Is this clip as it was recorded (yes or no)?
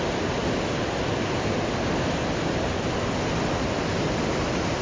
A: yes